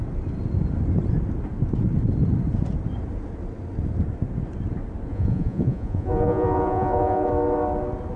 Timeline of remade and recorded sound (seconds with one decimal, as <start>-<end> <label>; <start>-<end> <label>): 0.0-5.1 recorded; 5.1-7.3 remade; 7.3-8.2 recorded